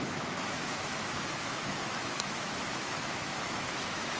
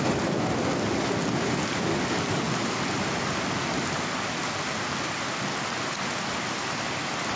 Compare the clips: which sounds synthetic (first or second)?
first